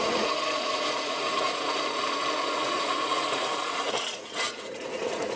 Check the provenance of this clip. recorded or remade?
remade